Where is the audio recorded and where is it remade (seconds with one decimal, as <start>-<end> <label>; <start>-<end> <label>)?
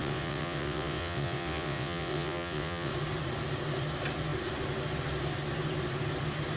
0.0-2.9 remade; 2.9-6.6 recorded